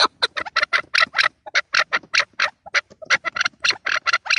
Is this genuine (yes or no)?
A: yes